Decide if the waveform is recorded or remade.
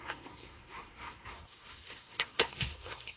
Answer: remade